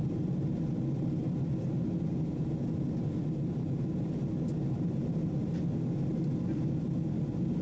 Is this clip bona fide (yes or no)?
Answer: yes